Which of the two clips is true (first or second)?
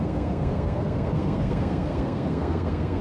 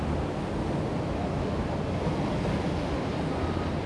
second